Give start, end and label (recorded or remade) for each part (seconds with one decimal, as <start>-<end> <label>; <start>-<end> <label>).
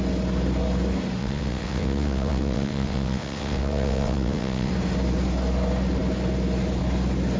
0.0-1.2 recorded; 1.2-4.7 remade; 4.7-7.4 recorded